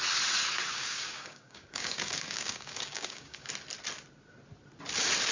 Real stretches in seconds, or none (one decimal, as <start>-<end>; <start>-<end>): 0.0-0.7; 3.5-5.3